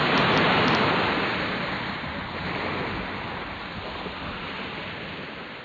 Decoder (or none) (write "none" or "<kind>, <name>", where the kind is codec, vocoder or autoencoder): none